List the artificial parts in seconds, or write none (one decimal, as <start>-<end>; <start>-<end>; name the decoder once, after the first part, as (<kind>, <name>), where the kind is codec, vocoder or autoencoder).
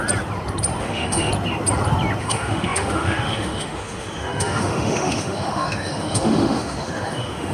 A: 0.8-1.3 (autoencoder, DAC-VAE); 2.2-7.5